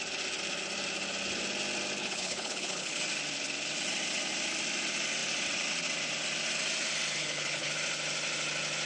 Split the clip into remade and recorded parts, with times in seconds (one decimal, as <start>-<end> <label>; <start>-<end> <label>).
0.0-2.0 recorded; 2.0-3.0 remade; 3.0-7.2 recorded; 7.2-7.7 remade; 7.7-8.9 recorded